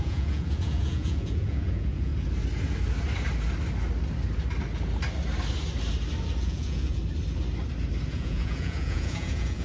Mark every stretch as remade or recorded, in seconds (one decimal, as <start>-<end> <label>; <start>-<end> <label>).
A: 0.0-2.1 remade; 2.1-6.4 recorded; 6.4-7.0 remade; 7.0-8.1 recorded; 8.1-9.6 remade